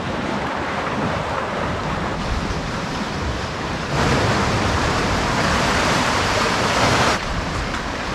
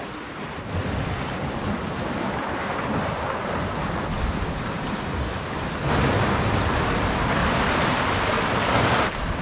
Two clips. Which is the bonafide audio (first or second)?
second